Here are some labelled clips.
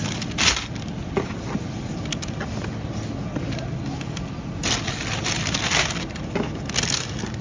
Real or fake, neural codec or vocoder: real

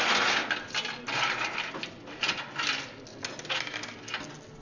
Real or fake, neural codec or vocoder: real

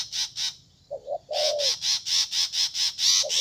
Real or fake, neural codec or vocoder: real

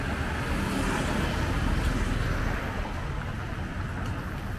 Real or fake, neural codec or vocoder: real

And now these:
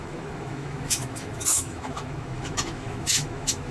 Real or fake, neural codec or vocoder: fake, autoencoder, DAC-VAE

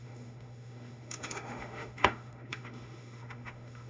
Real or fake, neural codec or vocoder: fake, autoencoder, DAC-VAE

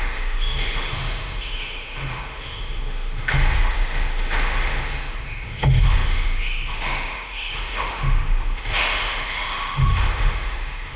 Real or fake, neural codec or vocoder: fake, autoencoder, DAC-VAE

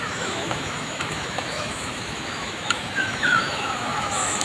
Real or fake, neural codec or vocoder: fake, autoencoder, DAC-VAE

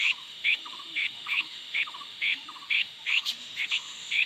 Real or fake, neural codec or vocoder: fake, autoencoder, DAC-VAE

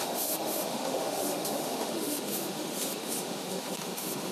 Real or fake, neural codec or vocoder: fake, autoencoder, DAC-VAE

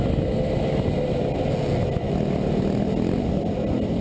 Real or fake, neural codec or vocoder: real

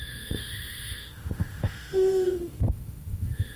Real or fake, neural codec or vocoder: fake, autoencoder, DAC-VAE